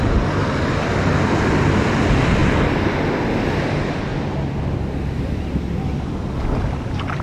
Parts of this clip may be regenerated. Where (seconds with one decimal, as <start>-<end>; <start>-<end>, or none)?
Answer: none